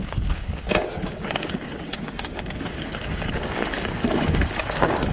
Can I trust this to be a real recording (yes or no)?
no